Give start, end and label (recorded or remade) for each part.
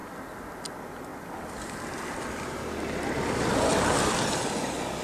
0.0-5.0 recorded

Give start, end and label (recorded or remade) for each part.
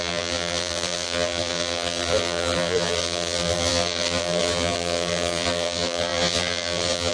0.0-7.1 remade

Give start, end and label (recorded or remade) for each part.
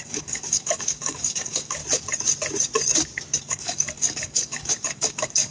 0.0-1.8 remade; 1.8-3.4 recorded; 3.4-5.5 remade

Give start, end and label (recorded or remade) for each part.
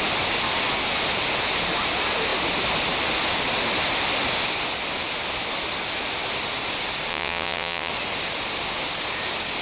0.0-7.1 recorded; 7.1-7.9 remade; 7.9-9.6 recorded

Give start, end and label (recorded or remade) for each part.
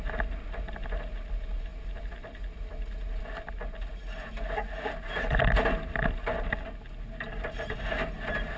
0.0-8.6 recorded